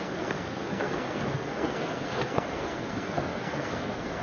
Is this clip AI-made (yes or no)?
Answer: yes